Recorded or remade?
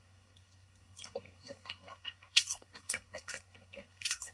remade